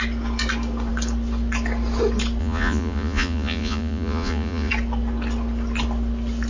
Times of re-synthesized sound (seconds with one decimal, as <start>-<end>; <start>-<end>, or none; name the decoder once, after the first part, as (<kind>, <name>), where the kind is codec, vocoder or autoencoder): 2.4-4.7 (vocoder, Vocos)